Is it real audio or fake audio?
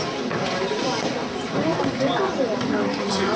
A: real